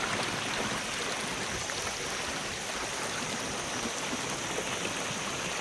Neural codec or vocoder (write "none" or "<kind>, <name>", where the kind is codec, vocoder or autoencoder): none